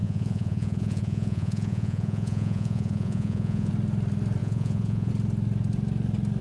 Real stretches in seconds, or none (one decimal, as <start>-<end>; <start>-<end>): 3.7-4.4; 5.1-6.4